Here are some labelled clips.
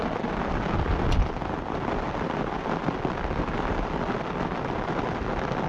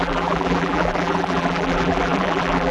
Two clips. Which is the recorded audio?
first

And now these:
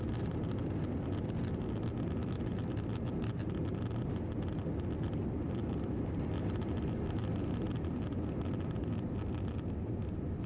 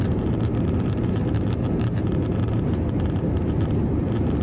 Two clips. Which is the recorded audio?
first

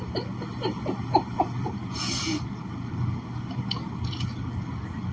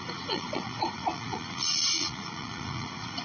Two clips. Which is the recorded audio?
first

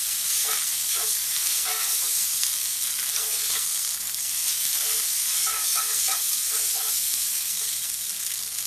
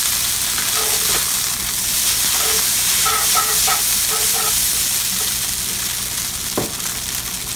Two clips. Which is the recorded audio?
second